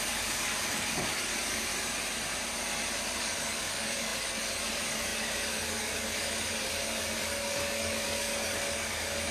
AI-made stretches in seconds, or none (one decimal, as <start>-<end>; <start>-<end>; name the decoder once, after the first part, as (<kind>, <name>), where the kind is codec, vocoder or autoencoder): 0.0-1.7 (codec, DAC); 3.2-9.3